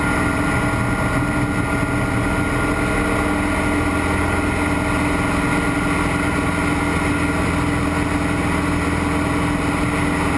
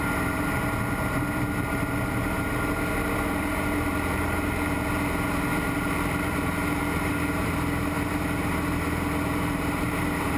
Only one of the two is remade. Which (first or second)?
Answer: second